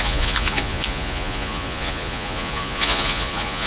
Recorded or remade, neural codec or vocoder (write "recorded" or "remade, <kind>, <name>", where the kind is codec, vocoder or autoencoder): remade, vocoder, Vocos